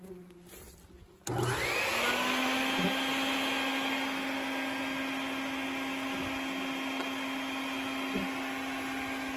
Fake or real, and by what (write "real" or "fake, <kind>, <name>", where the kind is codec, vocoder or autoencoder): real